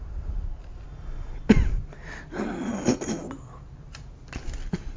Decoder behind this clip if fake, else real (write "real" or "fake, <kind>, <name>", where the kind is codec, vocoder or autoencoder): real